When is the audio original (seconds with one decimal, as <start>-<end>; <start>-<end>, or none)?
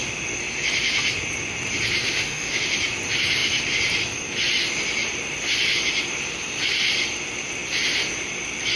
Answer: 0.0-2.0; 2.6-8.8